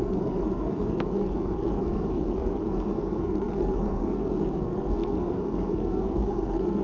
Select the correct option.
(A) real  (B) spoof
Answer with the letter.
B